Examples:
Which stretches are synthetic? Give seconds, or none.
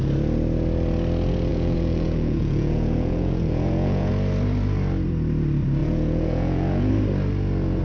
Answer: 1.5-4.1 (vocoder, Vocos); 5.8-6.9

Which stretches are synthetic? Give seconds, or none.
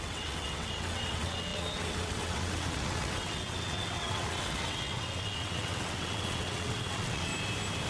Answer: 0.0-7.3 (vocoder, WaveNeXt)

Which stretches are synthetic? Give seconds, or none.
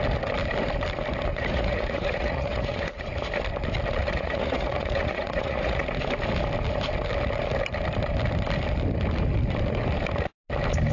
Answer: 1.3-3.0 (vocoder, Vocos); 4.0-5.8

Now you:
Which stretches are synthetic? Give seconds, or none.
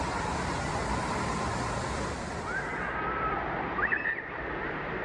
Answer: 0.0-0.8 (vocoder, BigVGAN v2); 2.3-2.7; 4.2-5.0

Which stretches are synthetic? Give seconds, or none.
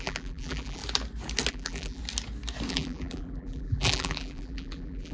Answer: 0.0-0.8 (vocoder, BigVGAN v2); 1.5-2.0; 2.7-5.1